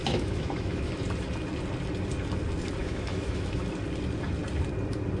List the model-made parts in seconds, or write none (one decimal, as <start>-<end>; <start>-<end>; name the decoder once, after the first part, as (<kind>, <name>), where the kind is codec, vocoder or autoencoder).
0.0-1.0 (autoencoder, DAC-VAE); 2.8-3.6

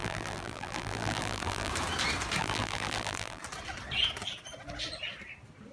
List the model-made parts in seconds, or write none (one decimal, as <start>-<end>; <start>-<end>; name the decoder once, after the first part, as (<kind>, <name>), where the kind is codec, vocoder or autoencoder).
0.0-1.7 (vocoder, BigVGAN v2); 2.4-3.4

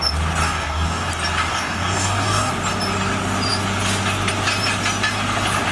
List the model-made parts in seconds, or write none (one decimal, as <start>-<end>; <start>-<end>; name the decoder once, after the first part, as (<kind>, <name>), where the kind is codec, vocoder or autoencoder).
0.4-1.1 (codec, DAC); 1.5-2.5

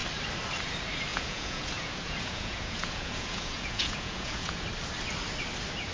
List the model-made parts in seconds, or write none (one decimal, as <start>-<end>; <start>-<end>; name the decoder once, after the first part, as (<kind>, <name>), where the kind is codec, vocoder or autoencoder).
1.1-4.6 (vocoder, Vocos)

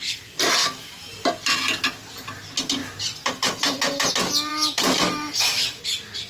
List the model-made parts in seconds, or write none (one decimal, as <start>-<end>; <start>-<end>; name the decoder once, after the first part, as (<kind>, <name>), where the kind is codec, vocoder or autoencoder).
0.6-1.1 (autoencoder, DAC-VAE); 4.5-5.8

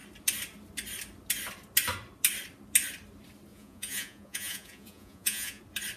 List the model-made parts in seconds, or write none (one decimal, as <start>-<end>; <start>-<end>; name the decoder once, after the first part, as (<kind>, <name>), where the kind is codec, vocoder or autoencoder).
3.5-5.6 (vocoder, Vocos)

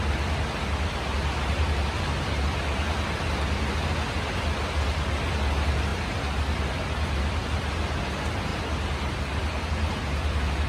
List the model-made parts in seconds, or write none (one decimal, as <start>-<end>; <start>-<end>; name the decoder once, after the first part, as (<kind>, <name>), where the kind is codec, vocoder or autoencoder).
none